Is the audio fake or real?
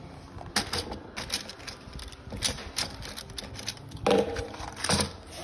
real